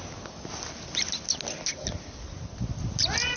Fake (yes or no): no